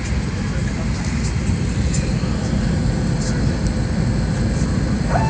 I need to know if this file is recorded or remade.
recorded